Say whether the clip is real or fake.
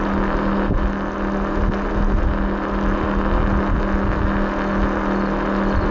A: real